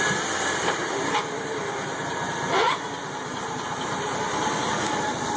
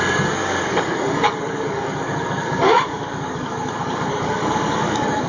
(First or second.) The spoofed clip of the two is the second